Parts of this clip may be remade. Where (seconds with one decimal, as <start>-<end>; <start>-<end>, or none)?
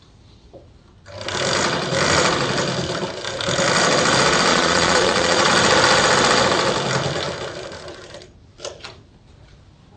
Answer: 4.5-5.5